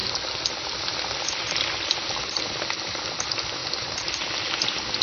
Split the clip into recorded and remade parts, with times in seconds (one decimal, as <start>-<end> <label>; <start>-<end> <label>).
0.0-3.6 recorded; 3.6-4.1 remade; 4.1-5.0 recorded